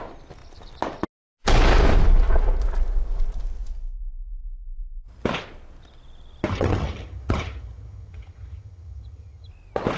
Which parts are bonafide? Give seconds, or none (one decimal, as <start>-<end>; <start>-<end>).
0.0-6.5; 9.5-10.0